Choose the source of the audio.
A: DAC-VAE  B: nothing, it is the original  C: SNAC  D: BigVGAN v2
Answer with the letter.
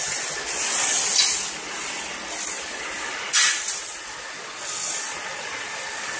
B